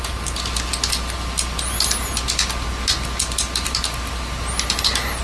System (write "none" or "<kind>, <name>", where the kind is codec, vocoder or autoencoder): none